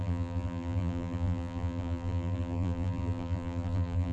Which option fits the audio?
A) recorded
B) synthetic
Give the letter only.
B